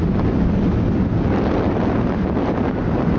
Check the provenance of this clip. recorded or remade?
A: recorded